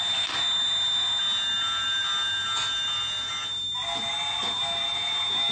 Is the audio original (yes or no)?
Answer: yes